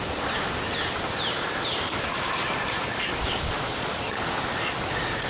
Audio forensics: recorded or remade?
recorded